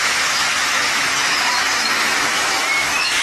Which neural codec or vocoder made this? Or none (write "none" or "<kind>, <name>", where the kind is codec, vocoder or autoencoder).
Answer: autoencoder, DAC-VAE